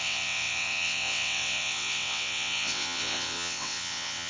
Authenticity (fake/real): fake